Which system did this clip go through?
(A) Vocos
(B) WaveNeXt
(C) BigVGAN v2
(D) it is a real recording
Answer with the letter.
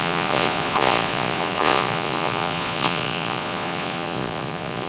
A